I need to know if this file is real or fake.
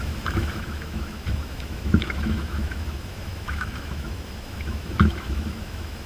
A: fake